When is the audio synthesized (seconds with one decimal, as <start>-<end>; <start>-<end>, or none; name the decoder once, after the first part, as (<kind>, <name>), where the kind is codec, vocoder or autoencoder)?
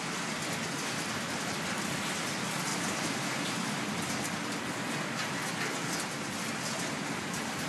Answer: none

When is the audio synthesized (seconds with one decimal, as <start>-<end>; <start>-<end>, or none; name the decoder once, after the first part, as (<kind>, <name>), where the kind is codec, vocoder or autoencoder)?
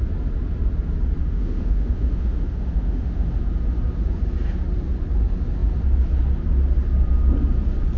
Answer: 1.2-3.3 (autoencoder, DAC-VAE)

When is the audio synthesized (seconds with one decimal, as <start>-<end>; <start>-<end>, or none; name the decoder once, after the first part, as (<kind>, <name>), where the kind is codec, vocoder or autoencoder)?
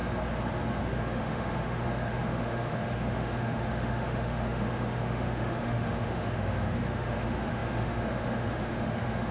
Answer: 0.8-9.3 (autoencoder, DAC-VAE)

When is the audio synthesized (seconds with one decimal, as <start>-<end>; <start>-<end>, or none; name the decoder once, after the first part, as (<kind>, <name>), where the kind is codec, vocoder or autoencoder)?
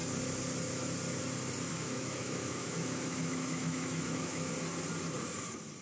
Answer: 1.7-4.5 (autoencoder, DAC-VAE)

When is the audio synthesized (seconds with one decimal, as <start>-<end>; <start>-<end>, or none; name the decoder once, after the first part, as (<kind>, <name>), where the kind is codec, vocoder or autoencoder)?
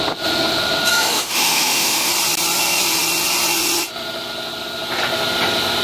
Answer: 0.9-2.1 (autoencoder, DAC-VAE)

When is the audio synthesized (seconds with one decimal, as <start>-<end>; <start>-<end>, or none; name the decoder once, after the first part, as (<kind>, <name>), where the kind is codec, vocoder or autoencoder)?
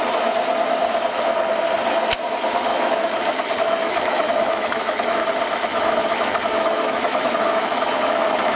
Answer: 2.7-5.2 (autoencoder, DAC-VAE); 5.7-8.6